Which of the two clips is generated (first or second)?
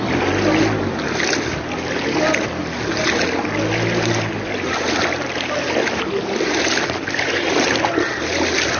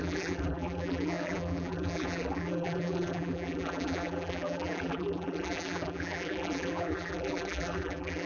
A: second